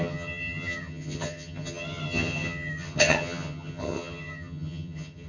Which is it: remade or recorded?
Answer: remade